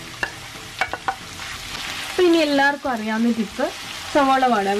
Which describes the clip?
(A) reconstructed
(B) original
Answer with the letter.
B